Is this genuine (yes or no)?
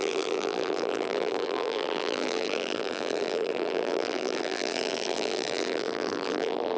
no